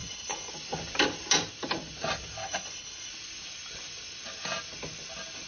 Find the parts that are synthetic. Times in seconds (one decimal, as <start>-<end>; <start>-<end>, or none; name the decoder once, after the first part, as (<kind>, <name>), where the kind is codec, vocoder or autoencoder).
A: 0.0-0.5 (codec, HILCodec); 2.4-3.1